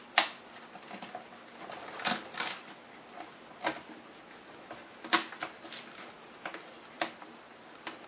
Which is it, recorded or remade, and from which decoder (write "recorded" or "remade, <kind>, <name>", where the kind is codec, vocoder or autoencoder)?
recorded